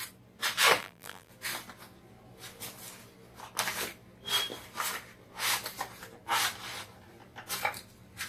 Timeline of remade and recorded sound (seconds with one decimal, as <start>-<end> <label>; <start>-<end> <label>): 0.0-0.8 recorded; 0.8-1.3 remade; 1.3-8.3 recorded

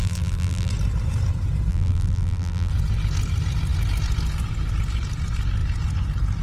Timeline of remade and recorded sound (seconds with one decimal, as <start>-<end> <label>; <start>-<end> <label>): 0.0-0.7 remade; 0.7-1.7 recorded; 1.7-2.7 remade; 2.7-6.4 recorded

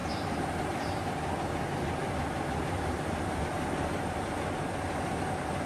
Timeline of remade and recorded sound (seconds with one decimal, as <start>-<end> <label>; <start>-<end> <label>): 0.0-5.7 recorded

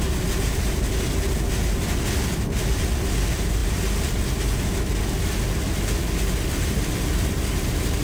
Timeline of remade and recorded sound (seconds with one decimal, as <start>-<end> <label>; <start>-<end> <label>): 0.0-8.0 recorded

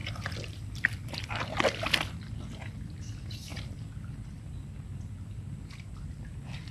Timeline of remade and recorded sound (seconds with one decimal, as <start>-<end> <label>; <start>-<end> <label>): 0.0-1.3 remade; 1.3-6.7 recorded

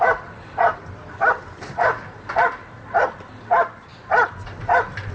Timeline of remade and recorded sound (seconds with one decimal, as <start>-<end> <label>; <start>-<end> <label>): 0.0-5.1 recorded